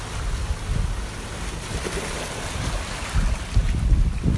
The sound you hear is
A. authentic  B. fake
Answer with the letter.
A